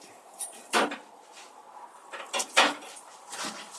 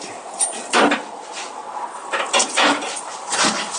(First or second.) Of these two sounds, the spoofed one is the first